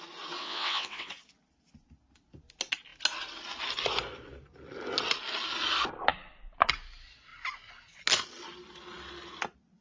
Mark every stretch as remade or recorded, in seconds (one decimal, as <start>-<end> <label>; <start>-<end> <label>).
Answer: 0.0-0.4 recorded; 0.4-1.1 remade; 1.1-9.8 recorded